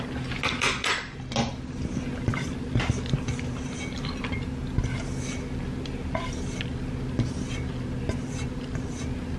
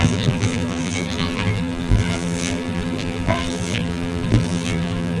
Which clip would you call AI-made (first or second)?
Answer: second